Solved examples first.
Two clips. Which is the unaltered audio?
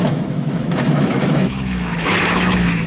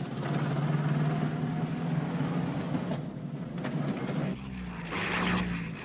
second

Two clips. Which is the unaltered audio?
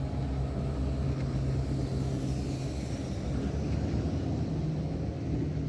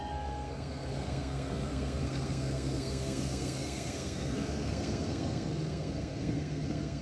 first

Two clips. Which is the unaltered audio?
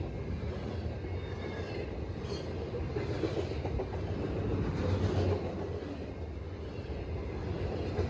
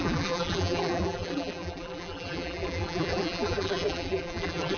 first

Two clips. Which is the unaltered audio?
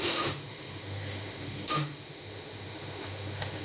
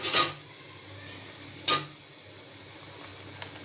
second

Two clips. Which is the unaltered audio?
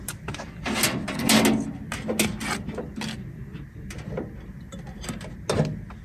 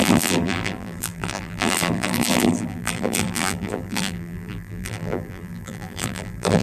first